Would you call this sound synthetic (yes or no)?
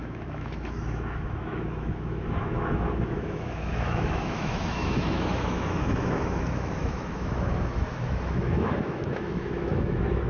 yes